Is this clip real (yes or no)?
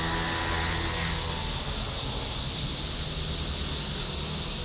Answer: yes